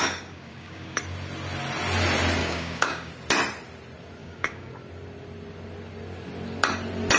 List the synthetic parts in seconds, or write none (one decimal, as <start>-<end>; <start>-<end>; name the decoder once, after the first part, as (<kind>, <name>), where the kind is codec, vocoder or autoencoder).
0.0-1.0 (codec, DAC); 2.4-3.1; 4.2-4.7